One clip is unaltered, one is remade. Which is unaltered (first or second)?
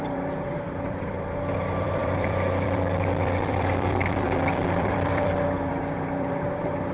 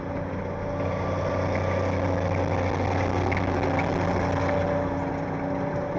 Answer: second